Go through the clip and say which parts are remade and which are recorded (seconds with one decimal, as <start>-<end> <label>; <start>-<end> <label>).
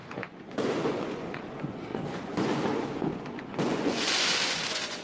0.0-5.0 remade